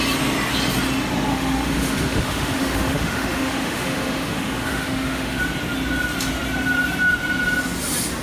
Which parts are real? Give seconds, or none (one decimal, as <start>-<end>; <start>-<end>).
0.0-1.3; 5.4-8.2